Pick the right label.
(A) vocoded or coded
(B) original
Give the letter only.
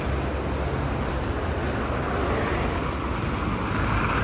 B